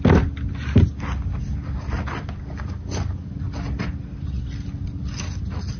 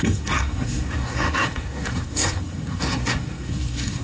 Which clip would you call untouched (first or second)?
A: first